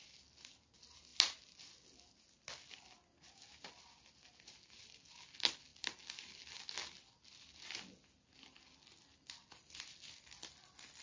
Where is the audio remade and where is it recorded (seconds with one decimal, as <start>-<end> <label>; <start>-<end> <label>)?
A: 0.0-11.0 recorded